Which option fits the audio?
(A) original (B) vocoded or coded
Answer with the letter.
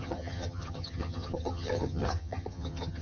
B